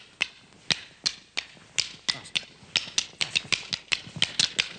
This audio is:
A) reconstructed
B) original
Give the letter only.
B